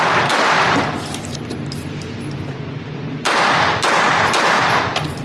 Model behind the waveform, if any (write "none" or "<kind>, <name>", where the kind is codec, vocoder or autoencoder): none